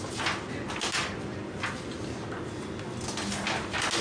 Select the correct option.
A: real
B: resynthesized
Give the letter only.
A